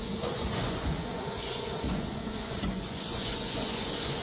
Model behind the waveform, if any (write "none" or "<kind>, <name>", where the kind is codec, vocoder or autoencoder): vocoder, Vocos